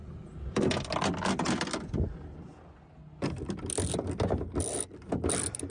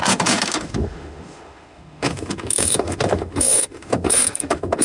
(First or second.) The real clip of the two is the first